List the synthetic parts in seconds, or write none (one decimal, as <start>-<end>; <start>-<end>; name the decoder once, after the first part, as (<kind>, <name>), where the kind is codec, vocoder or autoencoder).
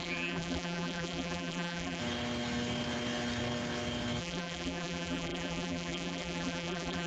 0.0-2.0 (vocoder, BigVGAN v2); 4.2-7.1